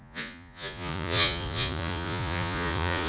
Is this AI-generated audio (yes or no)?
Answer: yes